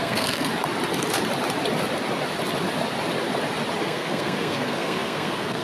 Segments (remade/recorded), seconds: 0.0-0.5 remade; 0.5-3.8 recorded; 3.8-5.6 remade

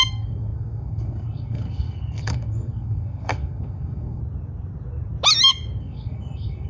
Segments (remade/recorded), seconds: 0.0-4.2 remade; 4.2-5.8 recorded; 5.8-6.7 remade

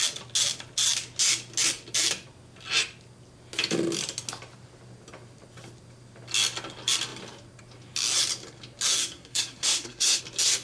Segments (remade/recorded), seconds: 0.0-9.0 recorded; 9.0-10.2 remade; 10.2-10.6 recorded